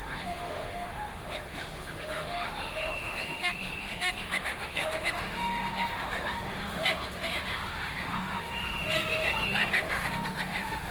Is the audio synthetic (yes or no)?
yes